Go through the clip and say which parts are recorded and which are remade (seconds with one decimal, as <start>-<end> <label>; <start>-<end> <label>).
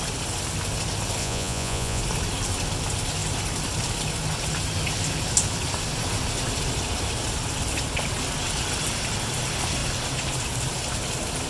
0.0-1.2 recorded; 1.2-2.0 remade; 2.0-11.5 recorded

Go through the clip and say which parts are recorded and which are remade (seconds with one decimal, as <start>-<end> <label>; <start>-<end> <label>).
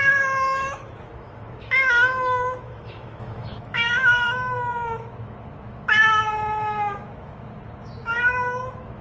0.0-9.0 remade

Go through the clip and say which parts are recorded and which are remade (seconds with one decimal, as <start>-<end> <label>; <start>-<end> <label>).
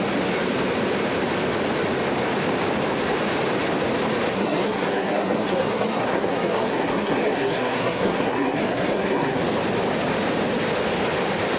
0.0-4.3 recorded; 4.3-9.4 remade; 9.4-11.6 recorded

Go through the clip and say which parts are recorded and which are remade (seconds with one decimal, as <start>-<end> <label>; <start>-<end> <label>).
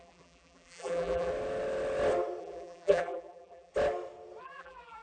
0.0-1.3 remade; 1.3-2.4 recorded; 2.4-3.7 remade; 3.7-4.4 recorded; 4.4-5.0 remade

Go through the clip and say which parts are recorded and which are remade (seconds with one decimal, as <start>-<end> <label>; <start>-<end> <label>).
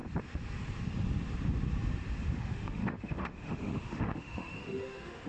0.0-2.2 recorded; 2.2-5.3 remade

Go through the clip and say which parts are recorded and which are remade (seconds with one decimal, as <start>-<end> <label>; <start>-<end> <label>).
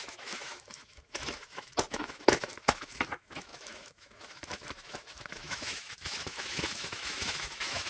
0.0-7.9 remade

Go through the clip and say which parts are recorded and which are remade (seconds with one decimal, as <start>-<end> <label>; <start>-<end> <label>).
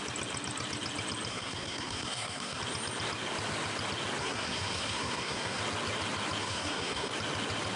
0.0-1.3 recorded; 1.3-2.6 remade; 2.6-4.2 recorded; 4.2-5.6 remade; 5.6-6.4 recorded; 6.4-7.1 remade; 7.1-7.8 recorded